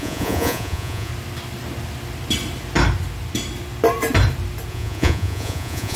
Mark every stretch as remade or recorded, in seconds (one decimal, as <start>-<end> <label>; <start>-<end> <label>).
0.0-1.1 remade; 1.1-4.7 recorded; 4.7-6.0 remade